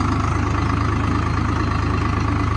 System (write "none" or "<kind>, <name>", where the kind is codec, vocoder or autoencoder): none